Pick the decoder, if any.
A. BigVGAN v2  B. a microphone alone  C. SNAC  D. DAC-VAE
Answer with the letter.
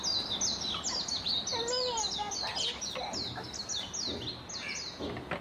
B